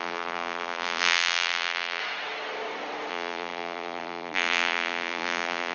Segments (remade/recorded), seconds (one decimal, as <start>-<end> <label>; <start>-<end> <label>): 0.0-2.0 remade; 2.0-3.1 recorded; 3.1-5.7 remade